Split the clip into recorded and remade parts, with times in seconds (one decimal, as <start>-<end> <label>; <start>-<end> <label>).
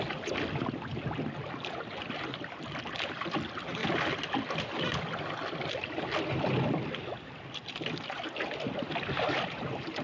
0.0-10.0 recorded